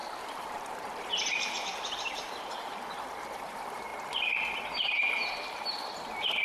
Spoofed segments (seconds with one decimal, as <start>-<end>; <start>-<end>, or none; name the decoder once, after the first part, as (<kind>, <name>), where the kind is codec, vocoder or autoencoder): 0.0-2.7 (vocoder, BigVGAN v2); 3.4-3.9; 4.5-6.4